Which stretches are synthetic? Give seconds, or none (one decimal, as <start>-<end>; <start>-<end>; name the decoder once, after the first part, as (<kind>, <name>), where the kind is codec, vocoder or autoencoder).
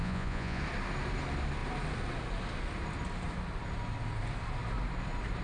0.0-0.6 (vocoder, Vocos)